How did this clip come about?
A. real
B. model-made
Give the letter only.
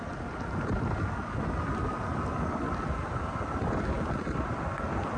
A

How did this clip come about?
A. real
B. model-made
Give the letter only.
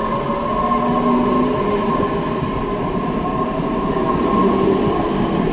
A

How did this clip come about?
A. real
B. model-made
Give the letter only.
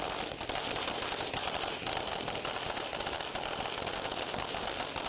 A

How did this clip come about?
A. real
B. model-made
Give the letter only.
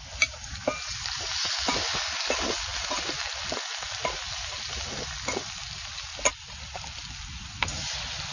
A